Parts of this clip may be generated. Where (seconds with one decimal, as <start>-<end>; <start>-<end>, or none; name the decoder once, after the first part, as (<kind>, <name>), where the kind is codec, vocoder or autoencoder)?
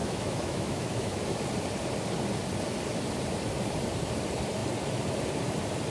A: 0.0-1.2 (autoencoder, DAC-VAE)